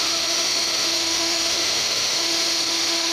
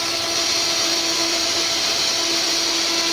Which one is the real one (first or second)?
second